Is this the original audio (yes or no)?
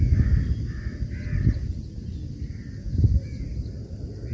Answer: yes